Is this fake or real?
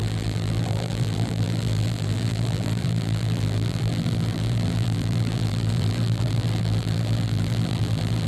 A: fake